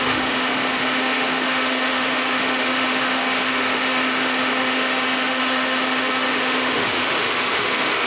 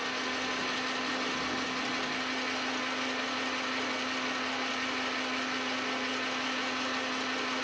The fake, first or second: first